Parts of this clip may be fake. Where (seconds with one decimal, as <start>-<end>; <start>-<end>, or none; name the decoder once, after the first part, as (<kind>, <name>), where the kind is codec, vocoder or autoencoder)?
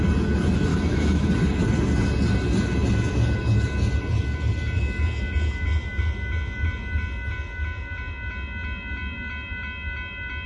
0.7-1.3 (autoencoder, DAC-VAE)